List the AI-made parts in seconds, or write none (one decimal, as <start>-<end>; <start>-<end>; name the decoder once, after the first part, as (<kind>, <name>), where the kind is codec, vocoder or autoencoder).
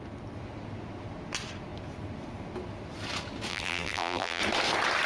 3.5-4.4 (vocoder, BigVGAN v2)